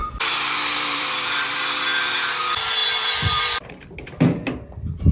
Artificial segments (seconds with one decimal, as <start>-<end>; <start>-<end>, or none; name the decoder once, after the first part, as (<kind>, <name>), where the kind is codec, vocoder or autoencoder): 0.0-2.4 (vocoder, BigVGAN v2); 2.8-3.7